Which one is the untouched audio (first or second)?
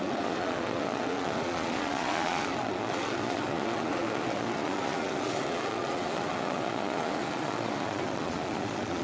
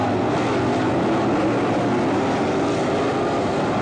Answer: second